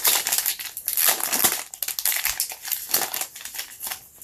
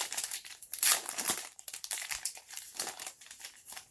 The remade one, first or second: second